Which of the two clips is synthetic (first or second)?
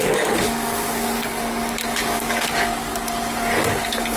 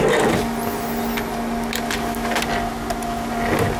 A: first